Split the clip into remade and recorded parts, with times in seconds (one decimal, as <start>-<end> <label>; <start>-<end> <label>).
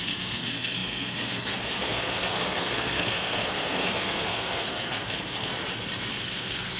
0.0-5.5 remade; 5.5-6.1 recorded; 6.1-6.8 remade